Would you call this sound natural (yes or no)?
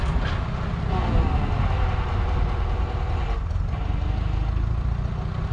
yes